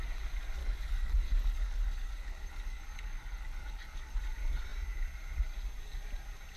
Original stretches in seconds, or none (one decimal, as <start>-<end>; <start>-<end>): 0.0-0.6; 4.2-6.6